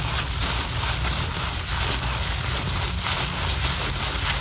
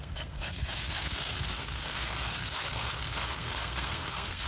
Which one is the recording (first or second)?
first